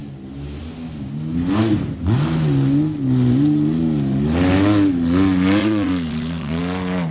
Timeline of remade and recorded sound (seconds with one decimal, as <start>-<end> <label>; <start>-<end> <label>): 0.0-5.6 recorded; 5.6-6.6 remade; 6.6-7.1 recorded